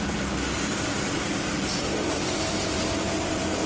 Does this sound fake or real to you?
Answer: fake